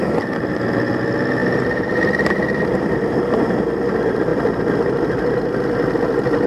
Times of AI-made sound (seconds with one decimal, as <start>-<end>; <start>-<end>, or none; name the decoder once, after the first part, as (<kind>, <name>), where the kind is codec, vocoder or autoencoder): 1.4-3.5 (vocoder, BigVGAN v2)